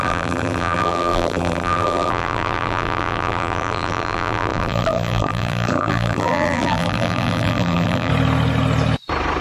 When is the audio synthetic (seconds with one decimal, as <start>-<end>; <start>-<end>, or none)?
0.0-8.1